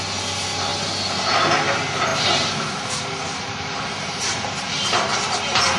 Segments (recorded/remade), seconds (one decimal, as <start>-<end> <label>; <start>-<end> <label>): 0.0-2.1 recorded; 2.1-5.8 remade